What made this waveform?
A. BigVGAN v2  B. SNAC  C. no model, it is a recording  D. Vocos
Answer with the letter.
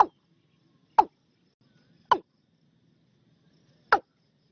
C